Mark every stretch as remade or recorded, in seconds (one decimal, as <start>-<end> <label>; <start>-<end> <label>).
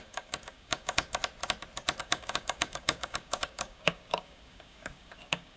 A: 0.0-1.2 remade; 1.2-2.0 recorded; 2.0-5.6 remade